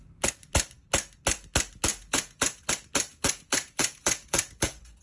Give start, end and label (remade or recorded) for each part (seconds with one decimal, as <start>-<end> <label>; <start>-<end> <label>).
0.0-1.9 recorded; 1.9-2.7 remade; 2.7-3.1 recorded; 3.1-5.0 remade